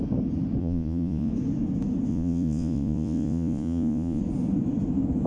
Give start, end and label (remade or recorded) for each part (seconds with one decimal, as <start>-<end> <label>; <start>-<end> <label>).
0.0-0.6 recorded; 0.6-1.3 remade; 1.3-2.1 recorded; 2.1-4.2 remade; 4.2-5.3 recorded